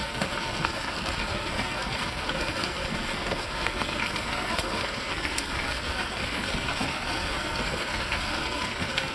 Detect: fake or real fake